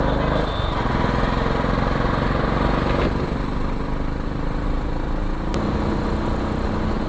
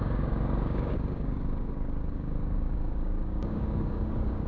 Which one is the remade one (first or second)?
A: second